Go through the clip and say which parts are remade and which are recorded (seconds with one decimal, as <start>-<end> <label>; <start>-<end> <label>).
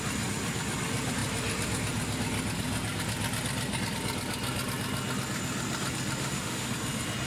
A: 0.0-6.2 recorded; 6.2-6.7 remade; 6.7-7.3 recorded